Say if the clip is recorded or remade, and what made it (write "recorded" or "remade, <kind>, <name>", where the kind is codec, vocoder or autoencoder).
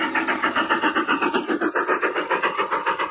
recorded